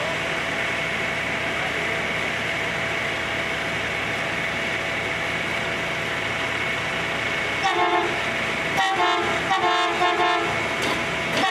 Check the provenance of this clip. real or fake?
real